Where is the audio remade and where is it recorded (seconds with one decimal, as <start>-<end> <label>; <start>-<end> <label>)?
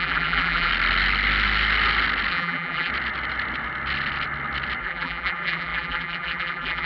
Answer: 0.0-0.7 remade; 0.7-2.3 recorded; 2.3-2.9 remade; 2.9-4.8 recorded; 4.8-6.9 remade